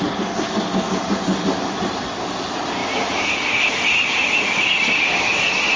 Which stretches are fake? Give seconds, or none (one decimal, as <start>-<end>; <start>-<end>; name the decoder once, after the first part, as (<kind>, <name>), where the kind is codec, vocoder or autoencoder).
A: none